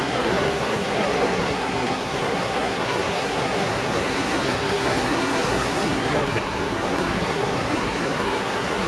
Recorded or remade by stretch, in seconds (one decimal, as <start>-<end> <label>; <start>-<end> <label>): 0.0-8.9 remade

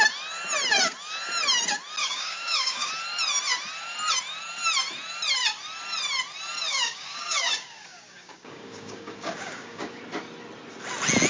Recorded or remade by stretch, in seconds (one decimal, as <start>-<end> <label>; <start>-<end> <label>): 0.0-2.0 recorded; 2.0-2.9 remade; 2.9-6.7 recorded; 6.7-10.0 remade; 10.0-11.3 recorded

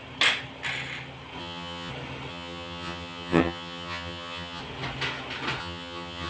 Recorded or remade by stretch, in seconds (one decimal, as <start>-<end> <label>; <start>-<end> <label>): 0.0-1.4 recorded; 1.4-1.9 remade; 1.9-2.3 recorded; 2.3-4.6 remade; 4.6-5.6 recorded; 5.6-6.3 remade

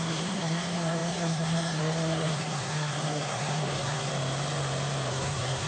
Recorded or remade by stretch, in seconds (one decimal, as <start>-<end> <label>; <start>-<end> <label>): 0.0-4.1 remade; 4.1-5.1 recorded; 5.1-5.7 remade

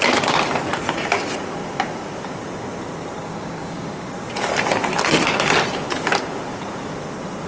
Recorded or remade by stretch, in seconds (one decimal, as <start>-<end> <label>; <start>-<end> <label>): 0.0-3.2 recorded; 3.2-4.1 remade; 4.1-7.5 recorded

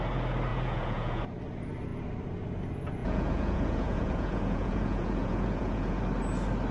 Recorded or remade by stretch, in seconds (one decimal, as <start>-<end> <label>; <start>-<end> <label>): 0.0-0.5 recorded; 0.5-1.2 remade; 1.2-3.0 recorded; 3.0-6.0 remade; 6.0-6.7 recorded

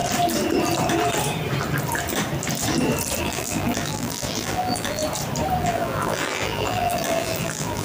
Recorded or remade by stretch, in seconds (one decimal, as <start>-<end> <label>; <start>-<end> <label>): 0.0-3.2 recorded; 3.2-5.0 remade; 5.0-5.6 recorded; 5.6-7.8 remade